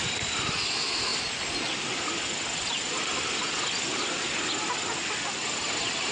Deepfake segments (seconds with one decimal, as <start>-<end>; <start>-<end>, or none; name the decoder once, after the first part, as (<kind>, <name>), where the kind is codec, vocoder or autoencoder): none